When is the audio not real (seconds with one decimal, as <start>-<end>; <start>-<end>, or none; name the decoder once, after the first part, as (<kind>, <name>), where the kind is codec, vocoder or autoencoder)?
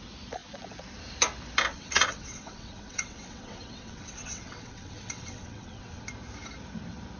1.7-6.0 (vocoder, WaveNeXt)